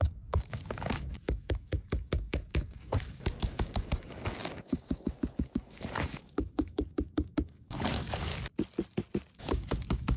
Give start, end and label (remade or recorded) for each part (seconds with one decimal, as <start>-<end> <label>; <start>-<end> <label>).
0.0-8.3 remade; 8.3-9.4 recorded; 9.4-10.2 remade